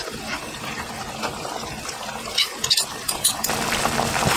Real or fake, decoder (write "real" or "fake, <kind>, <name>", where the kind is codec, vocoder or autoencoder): real